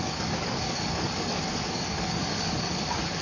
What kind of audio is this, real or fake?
fake